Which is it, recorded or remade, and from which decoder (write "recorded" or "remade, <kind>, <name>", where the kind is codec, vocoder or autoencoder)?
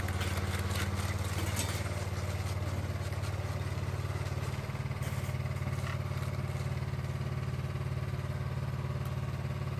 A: recorded